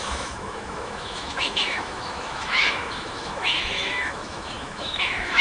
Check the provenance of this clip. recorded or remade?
remade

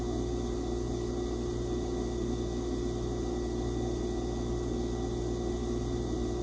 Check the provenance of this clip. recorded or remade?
recorded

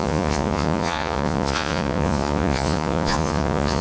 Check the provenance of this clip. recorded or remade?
remade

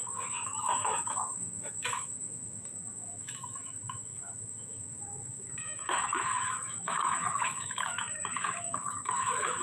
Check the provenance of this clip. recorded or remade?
remade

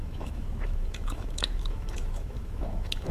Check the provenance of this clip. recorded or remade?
remade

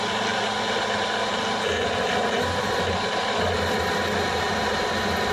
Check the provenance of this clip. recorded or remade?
recorded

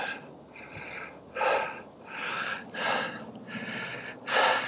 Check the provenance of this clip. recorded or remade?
recorded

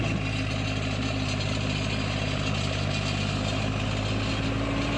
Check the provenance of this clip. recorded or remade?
recorded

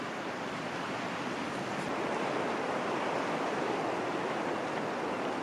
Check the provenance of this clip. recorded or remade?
recorded